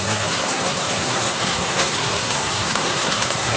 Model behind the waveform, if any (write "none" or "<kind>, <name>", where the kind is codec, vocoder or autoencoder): codec, SNAC